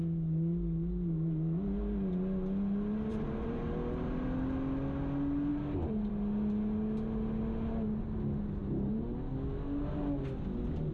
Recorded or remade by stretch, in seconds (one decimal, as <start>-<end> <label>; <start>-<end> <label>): 0.0-3.1 recorded; 3.1-3.6 remade; 3.6-10.9 recorded